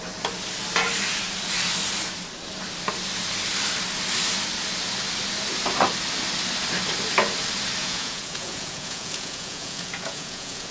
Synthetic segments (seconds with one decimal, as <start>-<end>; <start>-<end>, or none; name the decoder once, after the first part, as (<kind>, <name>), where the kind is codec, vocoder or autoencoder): 7.8-10.7 (vocoder, Vocos)